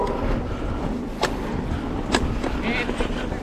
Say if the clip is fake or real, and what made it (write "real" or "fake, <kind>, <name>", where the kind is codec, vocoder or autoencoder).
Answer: real